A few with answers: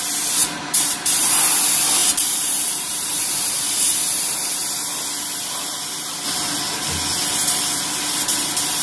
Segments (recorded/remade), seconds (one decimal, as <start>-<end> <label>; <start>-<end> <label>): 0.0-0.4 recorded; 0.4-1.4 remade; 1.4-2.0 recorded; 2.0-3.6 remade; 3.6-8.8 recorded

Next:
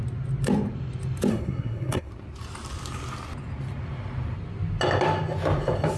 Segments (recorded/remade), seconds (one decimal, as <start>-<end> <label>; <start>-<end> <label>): 0.0-1.3 recorded; 1.3-2.1 remade; 2.1-6.0 recorded

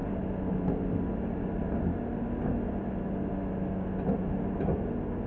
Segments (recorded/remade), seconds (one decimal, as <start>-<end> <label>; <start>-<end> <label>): 0.0-5.3 recorded

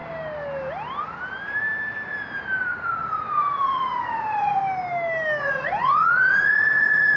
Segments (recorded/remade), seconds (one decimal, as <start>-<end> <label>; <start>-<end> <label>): 0.0-2.6 recorded; 2.6-4.6 remade; 4.6-5.4 recorded; 5.4-7.2 remade

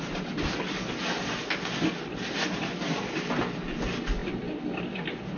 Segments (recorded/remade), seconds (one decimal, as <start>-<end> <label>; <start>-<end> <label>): 0.0-5.4 recorded

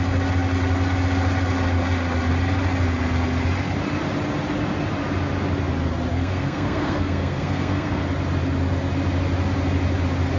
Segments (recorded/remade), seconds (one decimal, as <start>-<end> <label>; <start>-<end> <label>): 0.0-6.1 recorded; 6.1-8.0 remade; 8.0-10.4 recorded

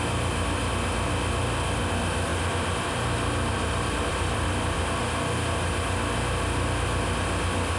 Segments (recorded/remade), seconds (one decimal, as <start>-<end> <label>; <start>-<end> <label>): 0.0-2.3 recorded; 2.3-4.8 remade; 4.8-7.8 recorded